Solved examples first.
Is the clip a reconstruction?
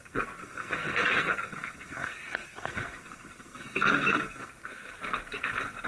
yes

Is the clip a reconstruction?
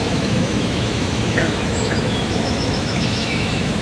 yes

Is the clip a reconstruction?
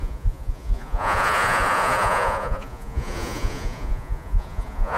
yes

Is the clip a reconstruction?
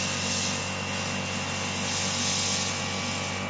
no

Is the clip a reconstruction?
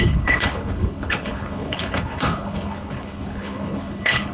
yes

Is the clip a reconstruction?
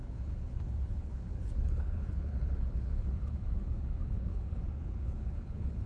yes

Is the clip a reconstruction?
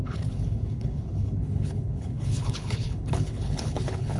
yes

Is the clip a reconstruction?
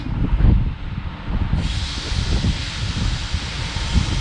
no